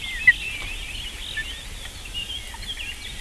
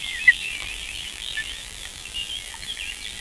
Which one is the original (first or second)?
first